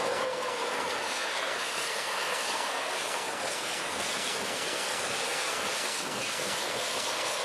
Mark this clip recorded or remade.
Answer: remade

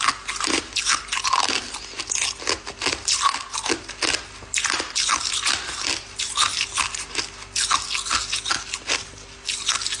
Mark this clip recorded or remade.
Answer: recorded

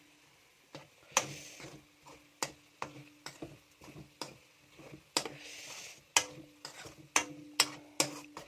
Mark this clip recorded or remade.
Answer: recorded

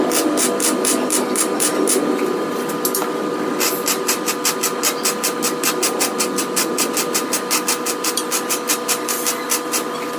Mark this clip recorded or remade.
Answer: recorded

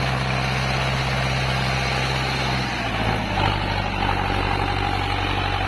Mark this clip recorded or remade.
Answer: recorded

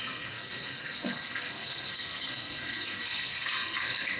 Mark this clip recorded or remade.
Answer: remade